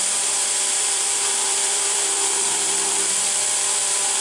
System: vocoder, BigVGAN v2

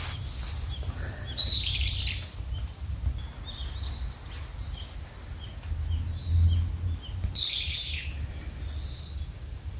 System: none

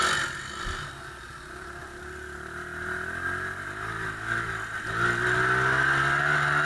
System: none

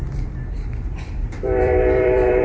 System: vocoder, BigVGAN v2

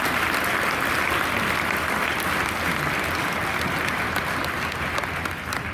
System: none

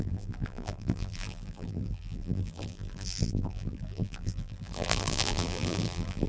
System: vocoder, BigVGAN v2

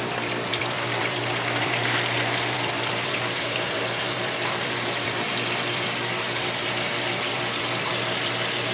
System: vocoder, BigVGAN v2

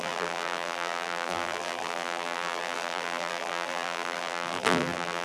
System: vocoder, BigVGAN v2